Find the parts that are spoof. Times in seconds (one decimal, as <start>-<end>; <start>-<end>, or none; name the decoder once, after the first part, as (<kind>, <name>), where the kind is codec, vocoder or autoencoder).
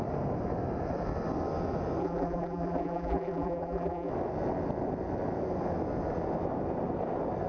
2.0-4.1 (vocoder, BigVGAN v2)